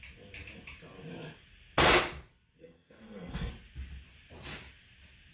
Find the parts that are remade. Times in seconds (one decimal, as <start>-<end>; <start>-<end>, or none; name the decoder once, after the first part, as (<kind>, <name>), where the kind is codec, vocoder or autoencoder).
2.6-3.5 (codec, SNAC)